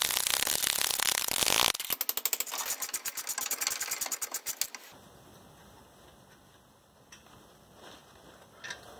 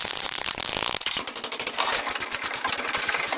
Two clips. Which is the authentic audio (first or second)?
first